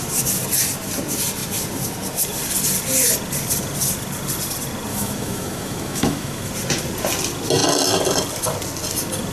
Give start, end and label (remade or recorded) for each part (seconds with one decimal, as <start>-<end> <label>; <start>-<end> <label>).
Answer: 0.0-4.9 recorded; 4.9-6.5 remade; 6.5-9.3 recorded

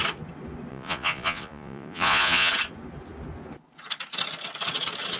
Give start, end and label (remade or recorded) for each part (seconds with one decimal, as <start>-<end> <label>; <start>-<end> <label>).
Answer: 0.0-0.7 recorded; 0.7-2.5 remade; 2.5-5.2 recorded

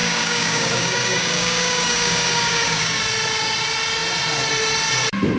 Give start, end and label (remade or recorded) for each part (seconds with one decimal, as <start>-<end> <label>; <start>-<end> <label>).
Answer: 0.0-3.0 remade; 3.0-5.4 recorded

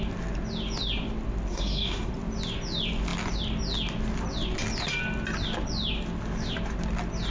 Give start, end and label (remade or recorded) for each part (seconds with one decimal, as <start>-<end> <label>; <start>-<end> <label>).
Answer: 0.0-1.5 recorded; 1.5-2.1 remade; 2.1-7.3 recorded

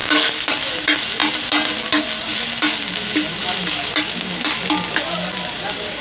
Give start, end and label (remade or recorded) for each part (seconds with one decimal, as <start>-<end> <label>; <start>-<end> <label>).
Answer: 0.0-0.5 remade; 0.5-6.0 recorded

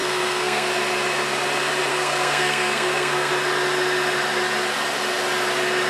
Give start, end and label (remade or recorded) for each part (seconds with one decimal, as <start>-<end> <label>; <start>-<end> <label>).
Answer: 0.0-0.7 remade; 0.7-1.9 recorded; 1.9-3.3 remade; 3.3-5.9 recorded

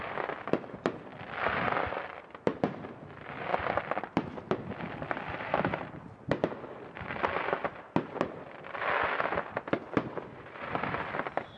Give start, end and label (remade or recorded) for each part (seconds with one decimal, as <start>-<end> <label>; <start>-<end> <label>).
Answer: 0.0-11.6 recorded